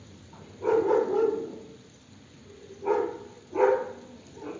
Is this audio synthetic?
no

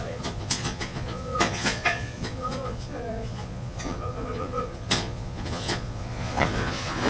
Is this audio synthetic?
yes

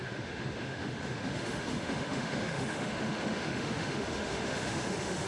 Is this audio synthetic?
yes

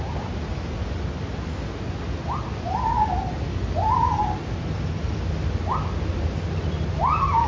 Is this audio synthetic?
no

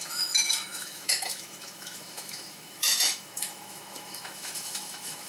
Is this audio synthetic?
yes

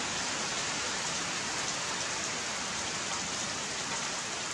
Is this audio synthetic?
no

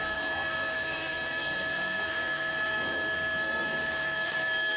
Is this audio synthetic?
yes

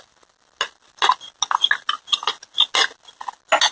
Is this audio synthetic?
no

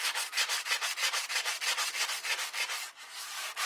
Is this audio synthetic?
yes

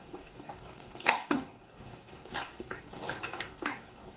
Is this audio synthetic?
yes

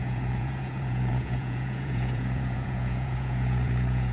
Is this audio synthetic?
yes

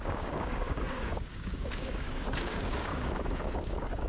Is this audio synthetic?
yes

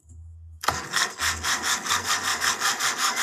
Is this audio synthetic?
yes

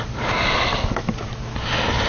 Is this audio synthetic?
no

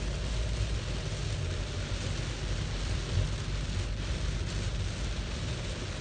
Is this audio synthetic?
no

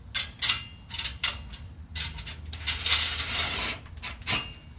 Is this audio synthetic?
no